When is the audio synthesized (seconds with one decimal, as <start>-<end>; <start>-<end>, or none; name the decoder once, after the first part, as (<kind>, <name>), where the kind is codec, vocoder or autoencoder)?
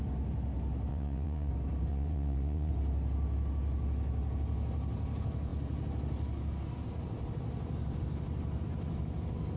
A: 0.9-1.5 (vocoder, WaveNeXt); 1.9-2.7